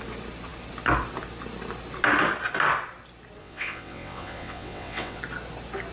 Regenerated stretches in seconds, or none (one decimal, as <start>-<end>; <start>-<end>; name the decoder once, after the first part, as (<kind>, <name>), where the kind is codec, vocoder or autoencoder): 3.4-5.2 (vocoder, WaveNeXt)